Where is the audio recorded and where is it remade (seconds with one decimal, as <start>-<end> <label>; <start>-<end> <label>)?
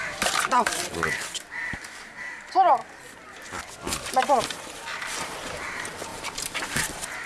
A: 0.0-2.8 remade; 2.8-4.4 recorded; 4.4-7.3 remade